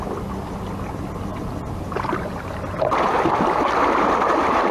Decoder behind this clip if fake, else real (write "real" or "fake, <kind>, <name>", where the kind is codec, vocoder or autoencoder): real